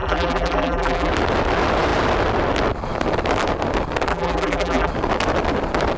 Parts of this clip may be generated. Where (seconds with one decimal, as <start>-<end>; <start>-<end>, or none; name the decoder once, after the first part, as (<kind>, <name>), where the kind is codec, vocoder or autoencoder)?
0.0-1.1 (vocoder, BigVGAN v2); 4.1-4.9